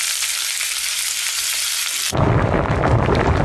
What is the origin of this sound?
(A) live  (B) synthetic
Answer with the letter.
A